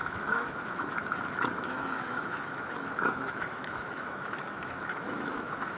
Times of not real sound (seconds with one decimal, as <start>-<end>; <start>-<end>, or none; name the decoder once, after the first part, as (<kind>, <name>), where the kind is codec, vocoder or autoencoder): 0.0-5.8 (autoencoder, DAC-VAE)